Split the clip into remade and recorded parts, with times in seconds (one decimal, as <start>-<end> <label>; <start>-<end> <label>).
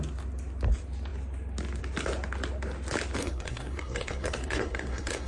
0.0-3.2 recorded; 3.2-5.3 remade